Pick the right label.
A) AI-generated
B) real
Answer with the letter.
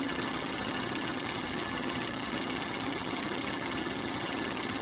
A